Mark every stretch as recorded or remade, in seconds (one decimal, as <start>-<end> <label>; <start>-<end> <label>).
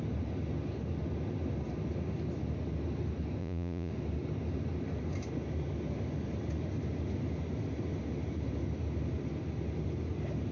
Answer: 0.0-3.4 recorded; 3.4-3.9 remade; 3.9-10.5 recorded